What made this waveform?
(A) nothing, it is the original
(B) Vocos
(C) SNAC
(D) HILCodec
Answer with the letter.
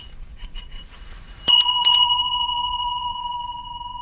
B